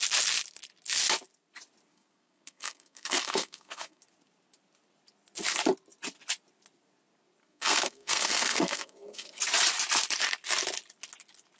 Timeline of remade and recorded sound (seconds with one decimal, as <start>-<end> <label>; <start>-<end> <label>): 0.0-1.9 recorded; 1.9-4.0 remade; 4.0-7.4 recorded; 7.4-9.4 remade; 9.4-11.6 recorded

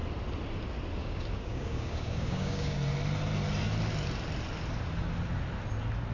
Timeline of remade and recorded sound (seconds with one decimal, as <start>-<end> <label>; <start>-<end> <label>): 0.0-1.0 recorded; 1.0-2.8 remade; 2.8-6.1 recorded

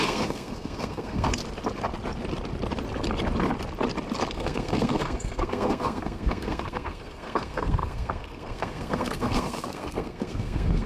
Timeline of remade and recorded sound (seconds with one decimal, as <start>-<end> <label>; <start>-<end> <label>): 0.0-1.4 remade; 1.4-4.3 recorded; 4.3-10.9 remade

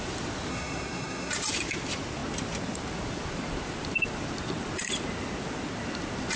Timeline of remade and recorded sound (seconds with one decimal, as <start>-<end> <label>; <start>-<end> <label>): 0.0-0.5 recorded; 0.5-1.3 remade; 1.3-6.4 recorded